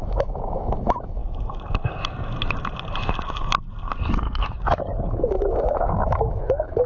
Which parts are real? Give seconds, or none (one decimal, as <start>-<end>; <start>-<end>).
1.2-5.0